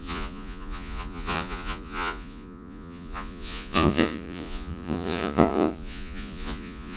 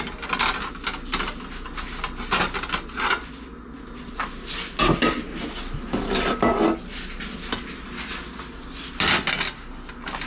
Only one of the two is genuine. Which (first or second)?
second